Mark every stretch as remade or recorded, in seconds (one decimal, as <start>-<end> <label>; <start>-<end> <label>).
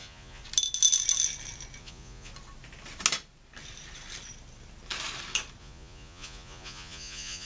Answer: 0.0-0.4 remade; 0.4-1.8 recorded; 1.8-2.3 remade; 2.3-5.6 recorded; 5.6-7.4 remade